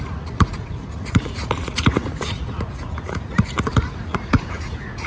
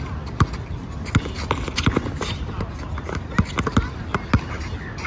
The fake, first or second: first